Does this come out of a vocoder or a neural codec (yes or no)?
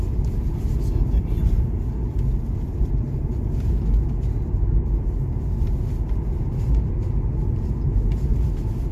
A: no